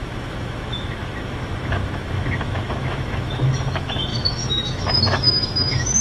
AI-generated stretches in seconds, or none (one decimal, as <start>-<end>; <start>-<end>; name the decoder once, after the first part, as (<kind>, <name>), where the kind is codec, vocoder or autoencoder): 0.0-6.0 (autoencoder, DAC-VAE)